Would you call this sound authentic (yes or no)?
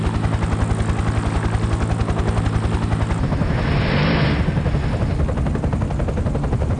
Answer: yes